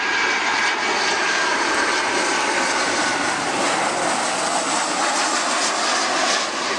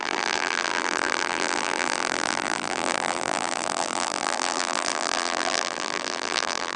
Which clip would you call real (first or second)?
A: first